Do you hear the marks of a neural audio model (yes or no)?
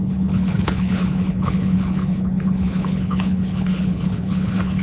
yes